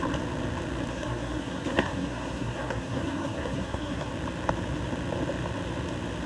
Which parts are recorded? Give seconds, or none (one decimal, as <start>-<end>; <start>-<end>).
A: 0.0-0.9; 4.1-6.3